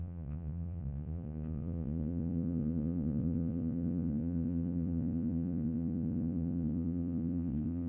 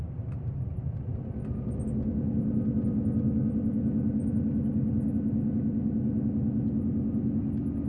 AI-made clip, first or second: first